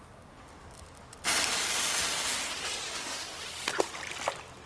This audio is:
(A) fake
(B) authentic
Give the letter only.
B